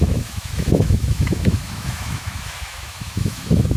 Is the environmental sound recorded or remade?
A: remade